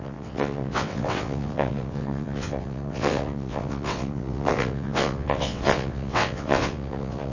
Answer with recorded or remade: remade